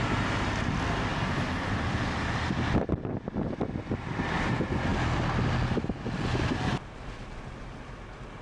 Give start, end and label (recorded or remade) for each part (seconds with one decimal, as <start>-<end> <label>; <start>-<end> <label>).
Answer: 0.0-8.4 recorded